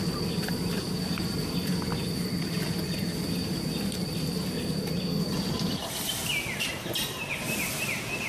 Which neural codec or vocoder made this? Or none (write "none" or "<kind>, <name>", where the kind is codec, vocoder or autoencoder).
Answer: none